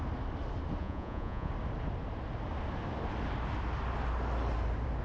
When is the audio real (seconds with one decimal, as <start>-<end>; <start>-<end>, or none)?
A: 0.0-0.8; 1.5-5.0